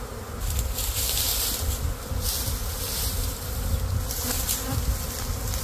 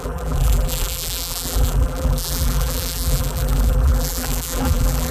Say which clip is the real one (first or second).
first